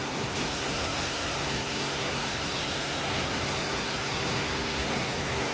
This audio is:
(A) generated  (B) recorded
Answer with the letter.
A